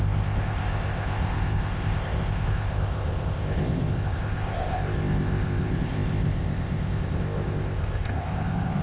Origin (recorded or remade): remade